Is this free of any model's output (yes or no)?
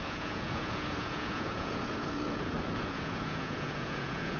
no